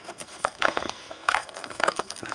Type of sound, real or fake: fake